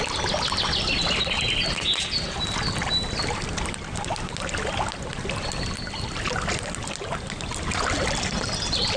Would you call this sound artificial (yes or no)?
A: no